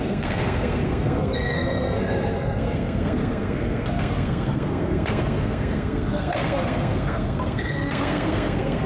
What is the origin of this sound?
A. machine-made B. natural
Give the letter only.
A